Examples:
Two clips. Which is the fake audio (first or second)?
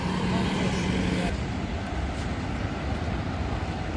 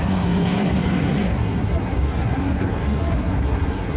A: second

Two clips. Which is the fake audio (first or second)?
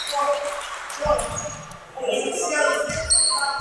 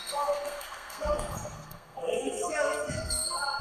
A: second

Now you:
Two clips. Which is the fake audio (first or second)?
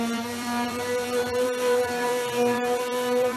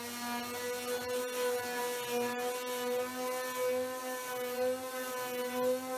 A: first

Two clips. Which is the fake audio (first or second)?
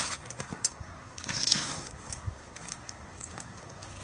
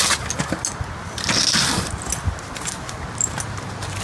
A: first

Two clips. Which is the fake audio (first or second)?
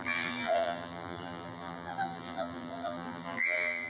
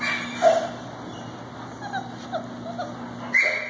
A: first